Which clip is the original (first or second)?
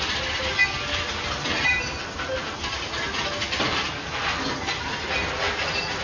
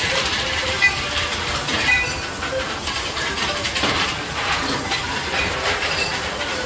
first